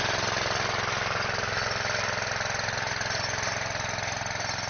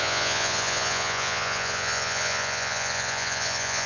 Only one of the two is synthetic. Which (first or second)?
second